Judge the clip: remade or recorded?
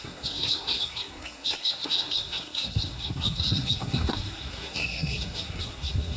remade